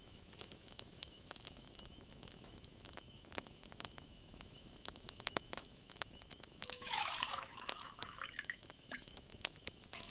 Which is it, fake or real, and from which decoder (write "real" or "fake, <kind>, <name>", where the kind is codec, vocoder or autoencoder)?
fake, autoencoder, DAC-VAE